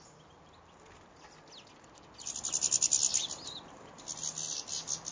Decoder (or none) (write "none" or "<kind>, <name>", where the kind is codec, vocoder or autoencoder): none